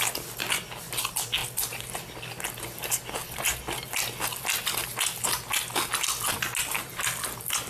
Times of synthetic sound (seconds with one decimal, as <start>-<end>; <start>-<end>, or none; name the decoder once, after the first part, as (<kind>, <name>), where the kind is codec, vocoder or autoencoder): none